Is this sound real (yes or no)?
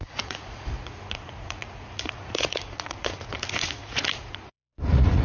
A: no